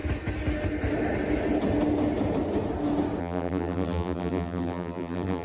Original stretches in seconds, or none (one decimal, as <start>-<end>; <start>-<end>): 0.0-3.2